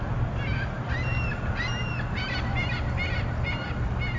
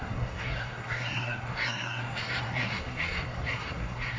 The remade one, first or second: second